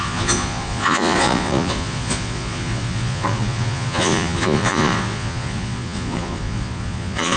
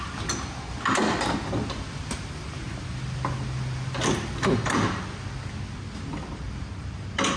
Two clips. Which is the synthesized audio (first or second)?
first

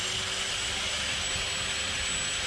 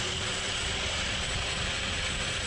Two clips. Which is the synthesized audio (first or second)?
second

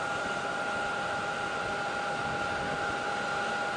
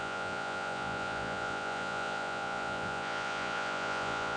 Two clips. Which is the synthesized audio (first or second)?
second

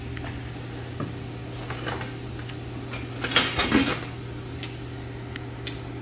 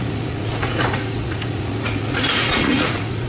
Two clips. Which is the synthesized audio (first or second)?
second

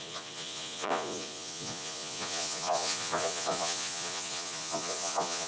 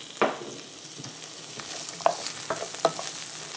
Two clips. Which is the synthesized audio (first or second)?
first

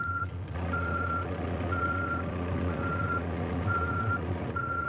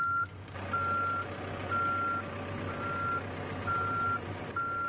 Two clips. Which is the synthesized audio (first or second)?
first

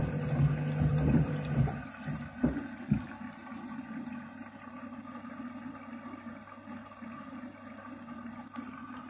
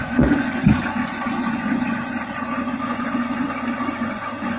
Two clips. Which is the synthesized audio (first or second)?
second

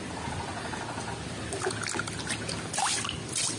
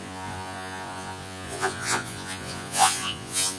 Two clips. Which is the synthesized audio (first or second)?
second